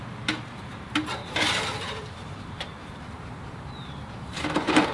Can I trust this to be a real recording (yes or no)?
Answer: no